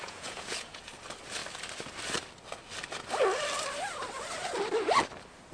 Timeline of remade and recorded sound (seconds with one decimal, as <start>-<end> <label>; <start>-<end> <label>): 0.0-0.8 remade; 0.8-5.5 recorded